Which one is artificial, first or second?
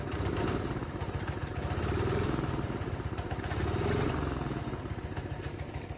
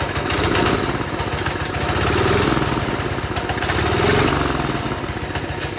first